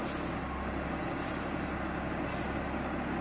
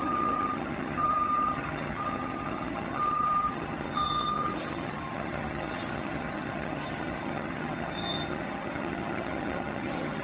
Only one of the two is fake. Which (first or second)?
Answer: second